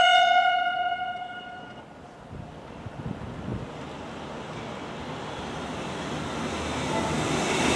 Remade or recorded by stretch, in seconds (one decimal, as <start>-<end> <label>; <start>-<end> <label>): 0.0-1.8 remade; 1.8-7.8 recorded